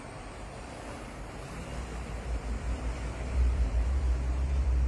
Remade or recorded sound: remade